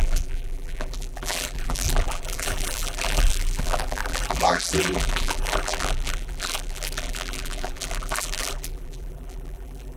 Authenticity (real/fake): fake